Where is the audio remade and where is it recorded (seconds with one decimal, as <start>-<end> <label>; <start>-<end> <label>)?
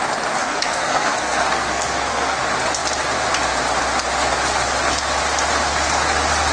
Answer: 0.0-0.4 recorded; 0.4-2.4 remade; 2.4-6.5 recorded